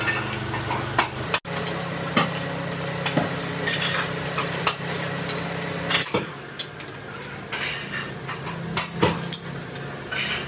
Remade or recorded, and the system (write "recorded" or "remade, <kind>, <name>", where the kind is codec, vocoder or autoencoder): recorded